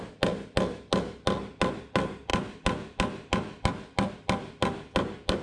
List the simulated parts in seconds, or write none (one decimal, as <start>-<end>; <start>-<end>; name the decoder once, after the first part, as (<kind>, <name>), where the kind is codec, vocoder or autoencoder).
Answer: none